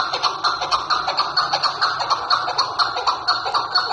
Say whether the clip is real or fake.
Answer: real